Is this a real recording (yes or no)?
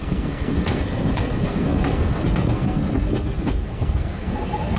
no